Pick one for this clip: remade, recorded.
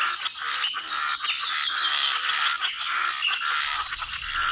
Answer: recorded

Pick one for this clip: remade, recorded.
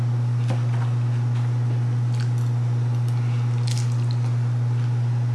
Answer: recorded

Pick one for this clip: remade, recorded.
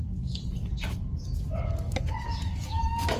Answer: remade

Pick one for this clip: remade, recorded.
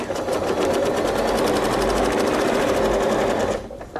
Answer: recorded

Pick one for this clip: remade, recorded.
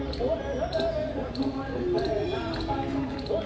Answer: recorded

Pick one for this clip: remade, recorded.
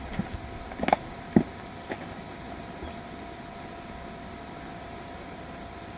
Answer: recorded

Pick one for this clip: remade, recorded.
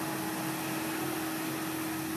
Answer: recorded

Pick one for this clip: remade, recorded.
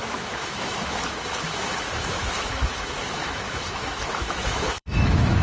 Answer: remade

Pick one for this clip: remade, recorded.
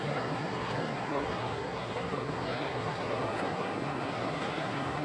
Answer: remade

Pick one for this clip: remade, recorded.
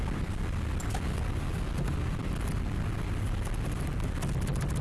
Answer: recorded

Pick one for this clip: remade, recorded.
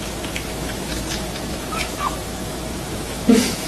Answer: remade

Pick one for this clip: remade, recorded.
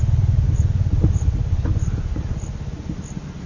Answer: recorded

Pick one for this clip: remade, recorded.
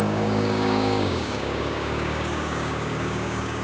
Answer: remade